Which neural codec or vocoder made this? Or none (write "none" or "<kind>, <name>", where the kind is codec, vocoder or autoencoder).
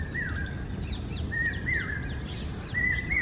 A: none